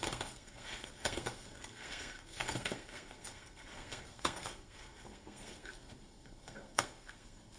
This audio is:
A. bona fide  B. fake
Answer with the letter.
B